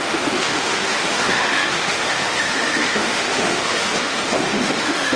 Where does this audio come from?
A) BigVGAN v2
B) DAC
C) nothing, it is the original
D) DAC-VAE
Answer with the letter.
D